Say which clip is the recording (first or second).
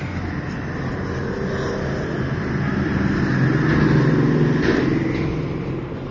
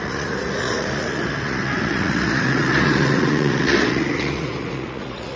first